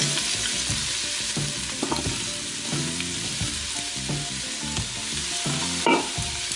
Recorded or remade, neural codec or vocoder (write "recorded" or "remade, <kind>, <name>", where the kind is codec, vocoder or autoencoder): recorded